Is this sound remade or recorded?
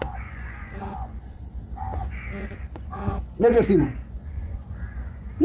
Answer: remade